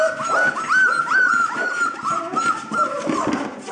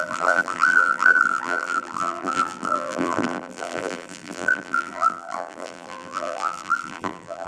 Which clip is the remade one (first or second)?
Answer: second